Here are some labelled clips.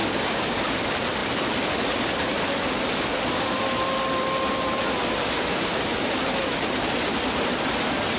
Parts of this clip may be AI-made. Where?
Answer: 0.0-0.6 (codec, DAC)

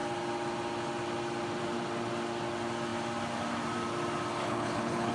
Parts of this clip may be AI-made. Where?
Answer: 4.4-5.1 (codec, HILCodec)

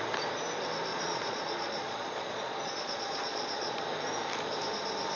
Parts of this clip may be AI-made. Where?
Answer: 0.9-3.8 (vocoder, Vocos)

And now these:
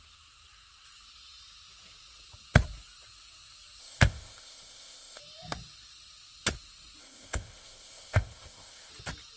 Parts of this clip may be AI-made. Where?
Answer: 3.8-5.2 (codec, ZipCodec); 7.0-8.9

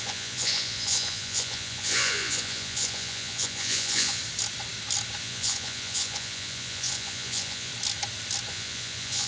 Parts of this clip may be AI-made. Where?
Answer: 0.0-4.2 (vocoder, Vocos); 5.2-7.7; 8.5-9.3

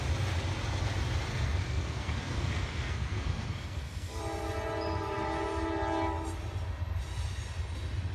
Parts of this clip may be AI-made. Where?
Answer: 1.3-4.2 (codec, SNAC)

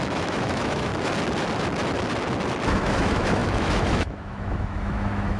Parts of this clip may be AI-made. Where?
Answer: 0.0-0.9 (autoencoder, DAC-VAE); 2.7-5.4